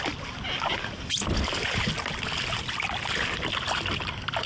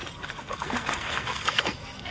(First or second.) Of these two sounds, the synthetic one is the second